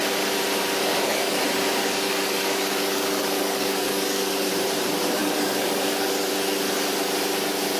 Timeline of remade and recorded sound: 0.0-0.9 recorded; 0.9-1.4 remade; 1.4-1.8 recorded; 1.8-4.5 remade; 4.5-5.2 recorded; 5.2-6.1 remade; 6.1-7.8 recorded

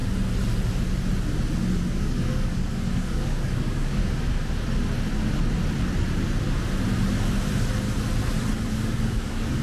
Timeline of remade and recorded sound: 0.0-1.9 recorded; 1.9-4.0 remade; 4.0-8.7 recorded; 8.7-9.6 remade

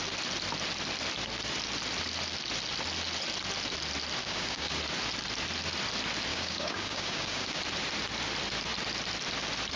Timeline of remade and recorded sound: 0.0-4.2 recorded; 4.2-4.8 remade; 4.8-6.3 recorded; 6.3-7.6 remade; 7.6-9.8 recorded

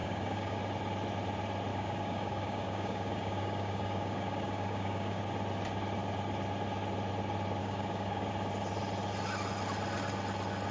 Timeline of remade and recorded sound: 0.0-0.6 remade; 0.6-1.7 recorded; 1.7-5.2 remade; 5.2-7.6 recorded; 7.6-8.3 remade; 8.3-10.7 recorded